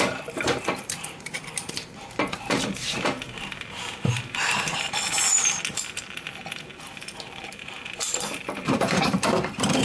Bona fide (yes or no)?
no